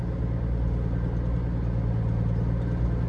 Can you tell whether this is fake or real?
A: real